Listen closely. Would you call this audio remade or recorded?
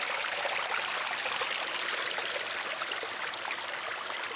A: recorded